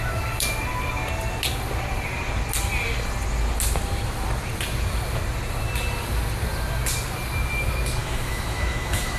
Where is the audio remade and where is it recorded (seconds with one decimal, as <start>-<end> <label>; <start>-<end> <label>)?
0.0-8.0 recorded; 8.0-9.2 remade